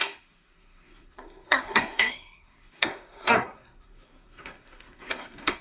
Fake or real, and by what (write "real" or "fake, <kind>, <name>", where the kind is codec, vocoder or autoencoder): fake, codec, SNAC